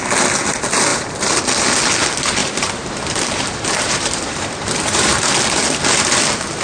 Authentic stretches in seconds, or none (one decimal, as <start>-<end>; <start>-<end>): 0.0-0.9; 1.4-2.4; 5.4-6.6